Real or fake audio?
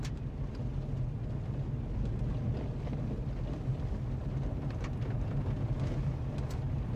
real